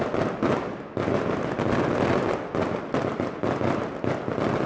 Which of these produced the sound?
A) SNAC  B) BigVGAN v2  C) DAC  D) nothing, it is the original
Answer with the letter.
D